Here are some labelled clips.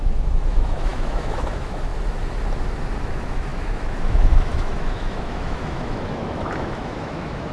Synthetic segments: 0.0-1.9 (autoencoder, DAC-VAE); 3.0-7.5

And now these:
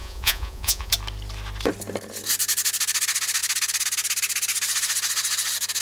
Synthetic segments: 0.0-0.9 (vocoder, Vocos)

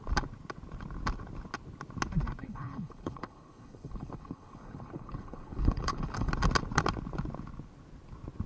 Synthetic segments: 2.4-6.3 (codec, HILCodec)

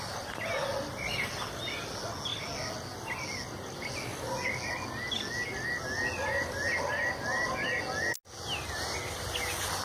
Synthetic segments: none